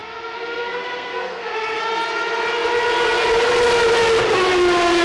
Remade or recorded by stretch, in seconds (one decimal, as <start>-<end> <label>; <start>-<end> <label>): 0.0-1.8 remade; 1.8-5.0 recorded